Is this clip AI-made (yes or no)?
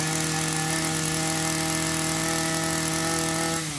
no